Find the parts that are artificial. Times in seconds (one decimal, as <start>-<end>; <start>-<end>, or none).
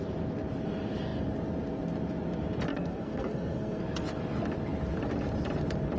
2.7-3.8